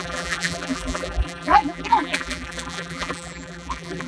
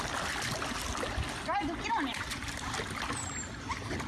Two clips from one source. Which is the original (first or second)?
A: second